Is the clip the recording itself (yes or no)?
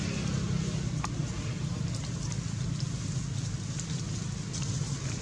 yes